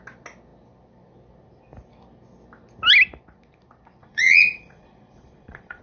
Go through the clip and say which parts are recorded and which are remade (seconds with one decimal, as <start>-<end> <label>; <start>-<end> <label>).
0.0-4.0 recorded; 4.0-5.8 remade